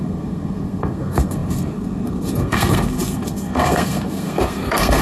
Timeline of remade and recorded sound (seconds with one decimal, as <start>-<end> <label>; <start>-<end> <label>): 0.0-5.0 remade